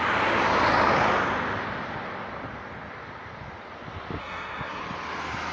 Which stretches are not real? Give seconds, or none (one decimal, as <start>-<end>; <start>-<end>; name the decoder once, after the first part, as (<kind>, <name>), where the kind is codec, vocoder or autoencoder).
4.2-4.8 (codec, SNAC)